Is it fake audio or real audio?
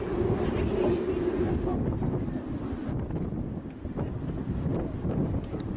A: real